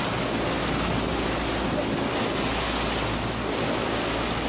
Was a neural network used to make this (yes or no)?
no